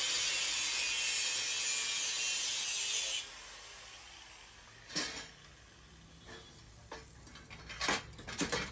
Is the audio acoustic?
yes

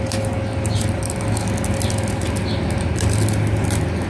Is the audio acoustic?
yes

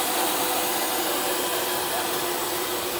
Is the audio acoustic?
yes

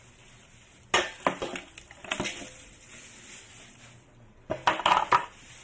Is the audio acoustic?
yes